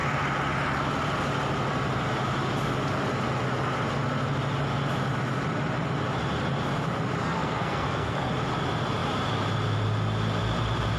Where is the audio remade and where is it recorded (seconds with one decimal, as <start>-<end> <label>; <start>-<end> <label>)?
0.0-7.4 recorded; 7.4-8.3 remade; 8.3-11.0 recorded